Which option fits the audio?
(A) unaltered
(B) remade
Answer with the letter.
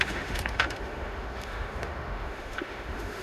B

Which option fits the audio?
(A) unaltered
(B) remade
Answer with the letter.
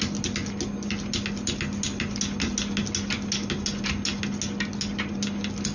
A